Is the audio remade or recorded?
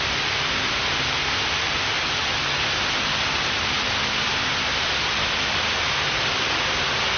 recorded